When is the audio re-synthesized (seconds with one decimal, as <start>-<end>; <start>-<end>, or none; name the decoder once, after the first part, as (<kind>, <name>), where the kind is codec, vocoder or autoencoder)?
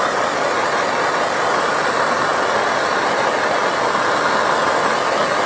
none